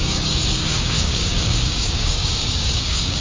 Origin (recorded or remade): remade